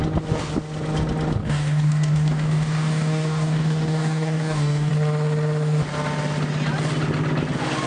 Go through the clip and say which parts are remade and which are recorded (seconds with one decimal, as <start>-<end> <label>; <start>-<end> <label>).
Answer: 0.0-1.4 recorded; 1.4-4.9 remade; 4.9-7.9 recorded